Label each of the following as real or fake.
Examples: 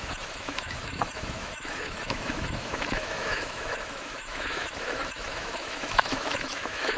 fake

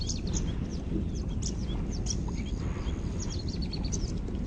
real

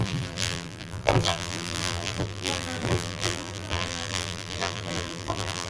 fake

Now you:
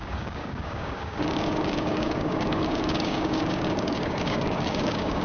fake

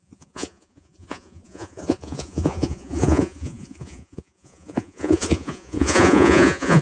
fake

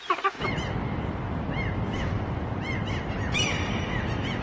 fake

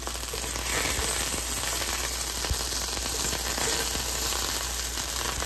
real